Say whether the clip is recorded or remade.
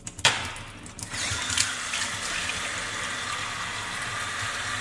recorded